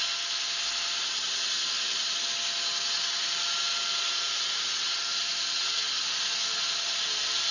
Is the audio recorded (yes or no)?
yes